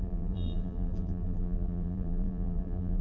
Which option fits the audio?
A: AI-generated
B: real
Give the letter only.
A